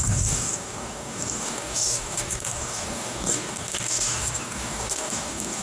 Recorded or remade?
remade